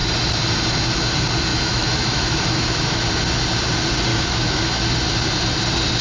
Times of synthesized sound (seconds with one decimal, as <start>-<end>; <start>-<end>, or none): 1.5-3.0; 4.1-4.8